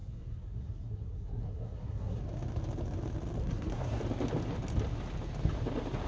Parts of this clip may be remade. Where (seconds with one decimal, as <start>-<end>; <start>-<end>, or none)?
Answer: 0.0-2.2; 3.4-4.0